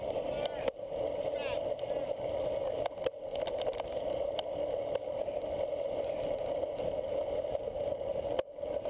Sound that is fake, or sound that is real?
real